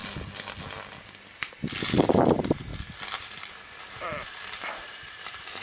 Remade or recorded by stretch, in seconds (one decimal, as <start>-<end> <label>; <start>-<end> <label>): 0.0-1.8 recorded; 1.8-2.7 remade; 2.7-3.2 recorded; 3.2-5.6 remade